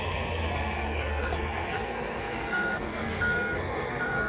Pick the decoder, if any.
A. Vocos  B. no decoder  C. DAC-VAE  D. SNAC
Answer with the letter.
D